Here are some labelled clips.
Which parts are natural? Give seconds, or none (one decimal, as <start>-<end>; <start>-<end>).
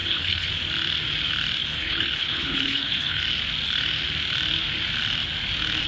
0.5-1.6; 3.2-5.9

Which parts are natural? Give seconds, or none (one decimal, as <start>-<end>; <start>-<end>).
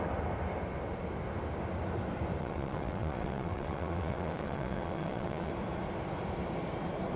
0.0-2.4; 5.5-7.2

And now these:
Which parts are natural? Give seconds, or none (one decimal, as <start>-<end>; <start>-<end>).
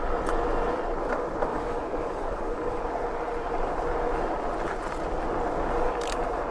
0.0-1.5; 2.8-6.5